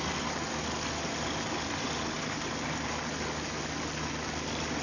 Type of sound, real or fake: real